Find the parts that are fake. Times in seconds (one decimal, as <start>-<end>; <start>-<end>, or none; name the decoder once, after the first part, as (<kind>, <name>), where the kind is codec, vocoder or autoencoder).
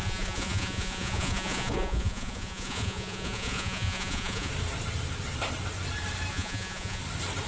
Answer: 0.0-4.5 (vocoder, Vocos); 6.3-7.0